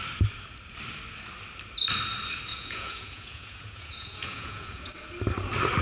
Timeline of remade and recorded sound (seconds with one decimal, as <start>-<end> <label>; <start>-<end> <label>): 0.0-2.5 recorded; 2.5-4.9 remade; 4.9-5.8 recorded